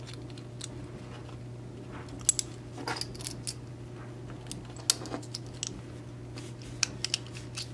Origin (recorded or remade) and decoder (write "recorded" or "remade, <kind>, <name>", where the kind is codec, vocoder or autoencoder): recorded